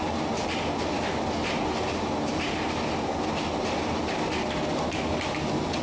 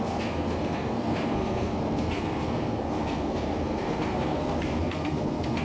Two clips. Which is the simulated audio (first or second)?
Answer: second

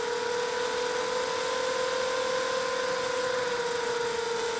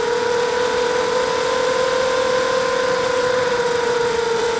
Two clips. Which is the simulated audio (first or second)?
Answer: second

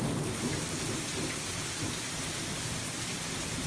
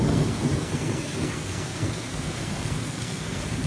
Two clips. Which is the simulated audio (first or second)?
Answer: second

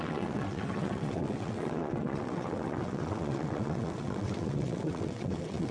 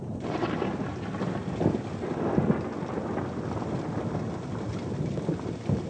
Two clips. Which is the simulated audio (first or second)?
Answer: first